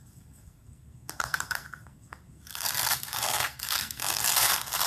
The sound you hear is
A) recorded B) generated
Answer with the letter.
B